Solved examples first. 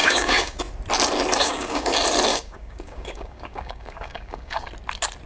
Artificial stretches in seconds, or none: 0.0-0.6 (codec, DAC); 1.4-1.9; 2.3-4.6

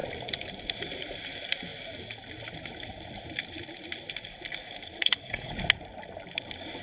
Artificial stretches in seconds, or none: 5.0-5.5 (codec, HILCodec)

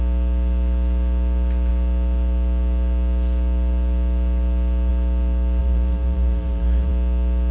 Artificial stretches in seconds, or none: 5.6-6.9 (vocoder, BigVGAN v2)

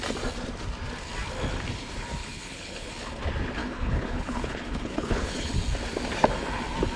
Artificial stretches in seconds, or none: 2.2-2.9 (codec, HILCodec); 3.6-5.5

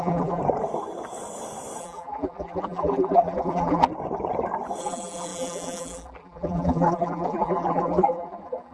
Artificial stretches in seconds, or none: 0.0-0.4 (vocoder, BigVGAN v2); 1.8-3.9; 4.8-8.7